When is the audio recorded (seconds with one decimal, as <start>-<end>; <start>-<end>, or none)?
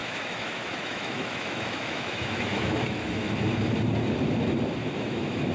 3.3-4.8